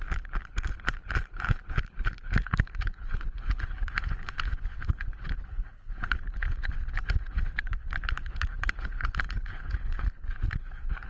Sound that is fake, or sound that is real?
fake